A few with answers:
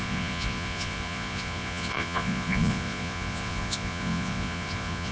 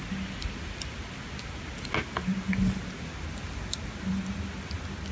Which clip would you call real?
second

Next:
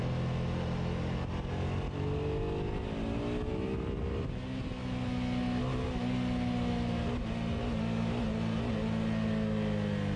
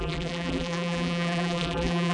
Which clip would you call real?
first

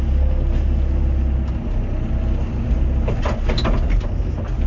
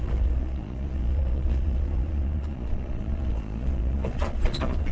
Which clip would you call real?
first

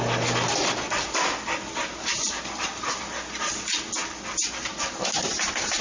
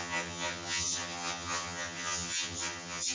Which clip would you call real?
first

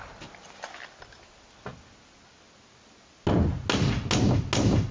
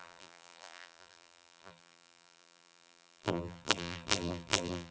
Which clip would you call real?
first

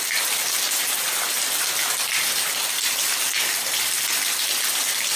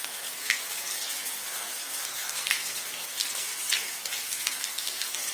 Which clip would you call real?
first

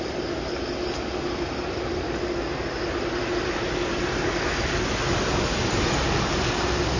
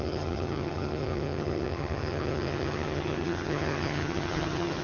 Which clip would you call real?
first